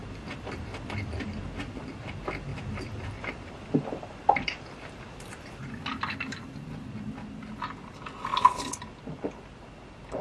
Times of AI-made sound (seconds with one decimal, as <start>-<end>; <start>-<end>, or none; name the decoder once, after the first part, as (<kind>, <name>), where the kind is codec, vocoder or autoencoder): 0.0-1.4 (vocoder, BigVGAN v2); 2.5-6.6